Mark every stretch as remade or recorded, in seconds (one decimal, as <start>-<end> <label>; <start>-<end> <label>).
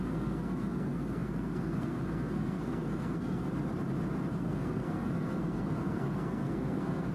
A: 0.0-3.5 remade; 3.5-4.3 recorded; 4.3-7.1 remade